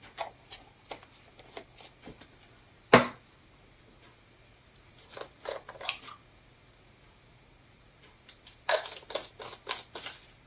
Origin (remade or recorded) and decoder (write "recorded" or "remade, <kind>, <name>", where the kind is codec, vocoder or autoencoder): recorded